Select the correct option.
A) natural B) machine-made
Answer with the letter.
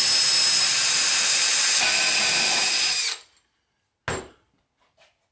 A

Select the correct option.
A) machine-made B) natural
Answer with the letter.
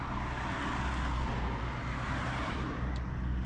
B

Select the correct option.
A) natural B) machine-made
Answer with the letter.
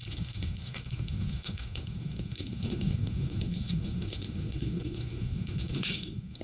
B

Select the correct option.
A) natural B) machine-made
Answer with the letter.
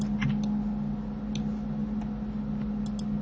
A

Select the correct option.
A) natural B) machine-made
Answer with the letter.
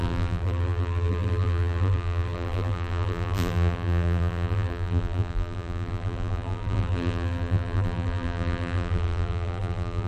B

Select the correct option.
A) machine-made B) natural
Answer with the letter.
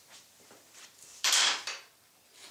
A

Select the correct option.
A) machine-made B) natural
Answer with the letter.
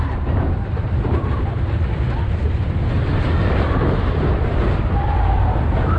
B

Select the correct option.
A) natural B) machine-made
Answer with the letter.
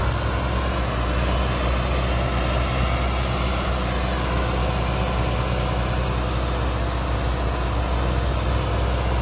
A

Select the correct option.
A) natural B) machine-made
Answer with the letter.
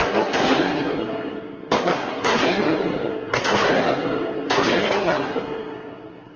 B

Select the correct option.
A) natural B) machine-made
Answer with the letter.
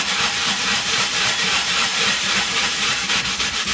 B